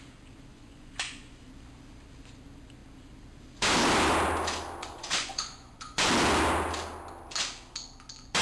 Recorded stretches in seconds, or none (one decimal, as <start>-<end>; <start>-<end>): 0.0-0.5; 1.4-4.8; 6.1-8.4